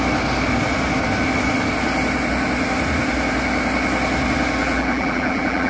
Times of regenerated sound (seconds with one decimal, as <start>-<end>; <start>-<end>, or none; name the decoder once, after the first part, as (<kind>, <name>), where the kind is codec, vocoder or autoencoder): 4.6-5.7 (vocoder, BigVGAN v2)